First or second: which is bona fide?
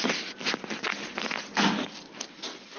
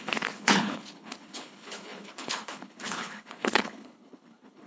first